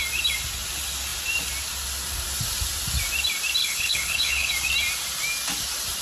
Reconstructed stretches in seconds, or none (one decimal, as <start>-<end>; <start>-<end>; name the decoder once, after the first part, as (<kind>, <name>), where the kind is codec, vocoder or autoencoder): 3.6-4.5 (codec, HILCodec)